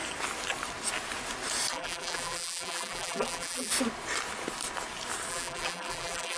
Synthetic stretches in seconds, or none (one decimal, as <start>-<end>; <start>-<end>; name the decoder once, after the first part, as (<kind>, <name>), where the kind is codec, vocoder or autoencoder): 1.7-3.7 (vocoder, BigVGAN v2); 5.3-6.4